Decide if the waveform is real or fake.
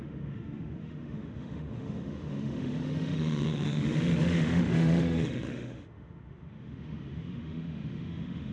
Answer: fake